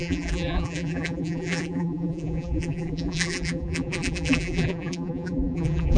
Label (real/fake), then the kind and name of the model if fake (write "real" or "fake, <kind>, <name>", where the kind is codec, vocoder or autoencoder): fake, vocoder, BigVGAN v2